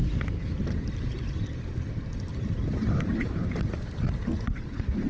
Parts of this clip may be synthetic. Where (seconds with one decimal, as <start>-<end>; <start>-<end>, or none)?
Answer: 0.0-0.6; 2.3-4.3